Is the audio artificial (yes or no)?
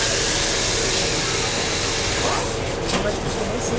no